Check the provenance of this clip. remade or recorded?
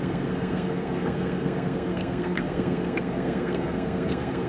remade